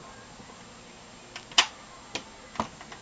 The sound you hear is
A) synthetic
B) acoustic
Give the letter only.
B